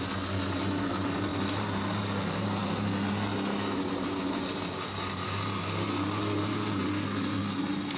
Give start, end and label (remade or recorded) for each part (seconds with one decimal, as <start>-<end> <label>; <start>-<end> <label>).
0.0-8.0 recorded